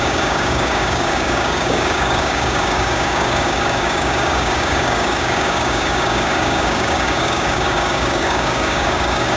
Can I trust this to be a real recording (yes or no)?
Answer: no